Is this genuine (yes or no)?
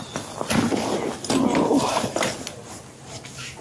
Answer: yes